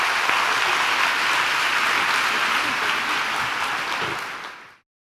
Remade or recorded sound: recorded